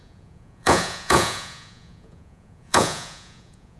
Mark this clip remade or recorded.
remade